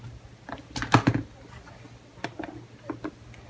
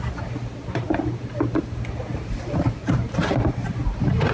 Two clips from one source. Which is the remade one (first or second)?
second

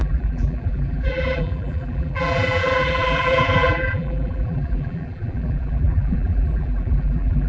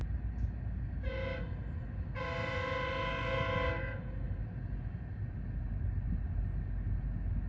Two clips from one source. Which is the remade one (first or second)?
first